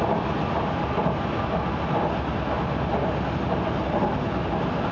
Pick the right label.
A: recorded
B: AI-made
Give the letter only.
A